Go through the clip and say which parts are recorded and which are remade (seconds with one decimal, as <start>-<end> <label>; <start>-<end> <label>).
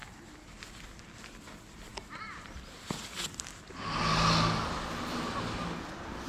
0.0-6.3 recorded